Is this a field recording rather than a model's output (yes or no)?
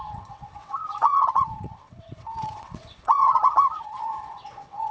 no